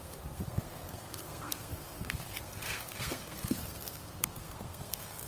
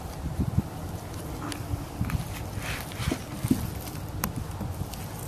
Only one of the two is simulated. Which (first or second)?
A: first